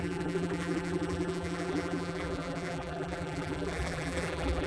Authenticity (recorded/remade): remade